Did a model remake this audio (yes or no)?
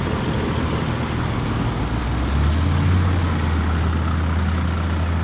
no